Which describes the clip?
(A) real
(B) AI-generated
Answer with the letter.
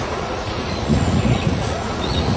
B